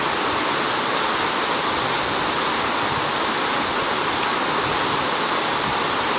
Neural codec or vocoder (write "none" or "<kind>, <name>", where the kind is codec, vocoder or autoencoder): none